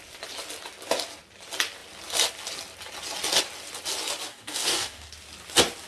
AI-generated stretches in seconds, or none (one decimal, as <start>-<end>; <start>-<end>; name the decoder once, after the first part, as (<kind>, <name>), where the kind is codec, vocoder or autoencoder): 4.3-5.1 (codec, DAC)